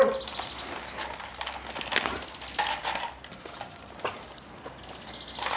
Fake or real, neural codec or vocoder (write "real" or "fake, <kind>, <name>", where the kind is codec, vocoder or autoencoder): real